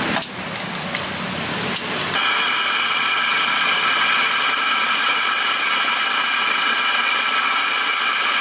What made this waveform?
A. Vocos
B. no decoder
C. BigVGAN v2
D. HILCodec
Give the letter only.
B